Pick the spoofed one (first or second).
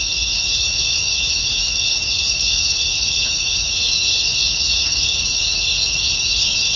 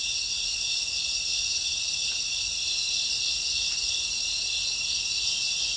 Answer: first